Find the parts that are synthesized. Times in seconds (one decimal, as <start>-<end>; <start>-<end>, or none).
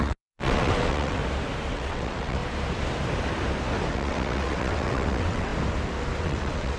0.0-1.2; 1.7-2.4; 3.9-5.5; 6.2-6.8